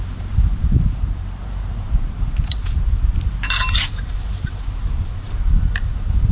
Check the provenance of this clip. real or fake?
fake